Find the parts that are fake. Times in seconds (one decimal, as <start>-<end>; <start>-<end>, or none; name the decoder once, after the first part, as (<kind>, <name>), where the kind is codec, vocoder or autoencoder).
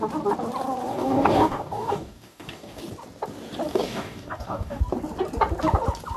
0.9-2.8 (codec, DAC); 3.7-4.8